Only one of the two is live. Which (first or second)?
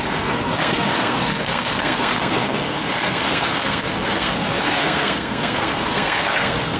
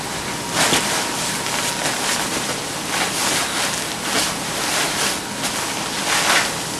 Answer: second